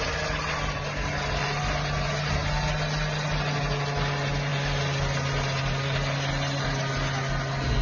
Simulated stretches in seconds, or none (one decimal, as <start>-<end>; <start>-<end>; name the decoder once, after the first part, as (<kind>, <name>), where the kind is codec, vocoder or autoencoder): none